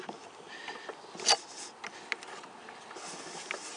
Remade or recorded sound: recorded